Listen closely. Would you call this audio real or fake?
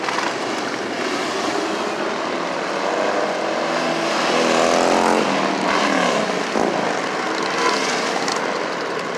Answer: real